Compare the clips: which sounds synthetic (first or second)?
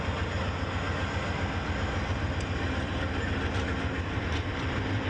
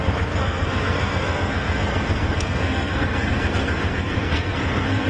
second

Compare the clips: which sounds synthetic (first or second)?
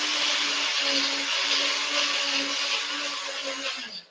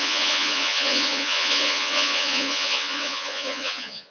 second